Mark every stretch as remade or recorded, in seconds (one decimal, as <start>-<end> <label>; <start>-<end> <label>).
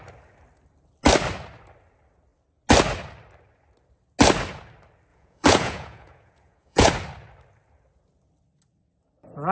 0.0-5.1 recorded; 5.1-6.9 remade; 6.9-9.5 recorded